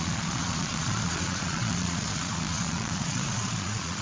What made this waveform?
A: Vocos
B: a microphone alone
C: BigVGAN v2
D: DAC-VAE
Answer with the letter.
A